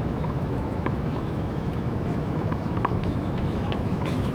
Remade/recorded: remade